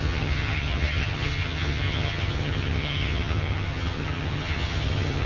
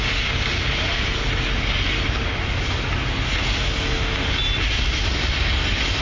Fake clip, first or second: first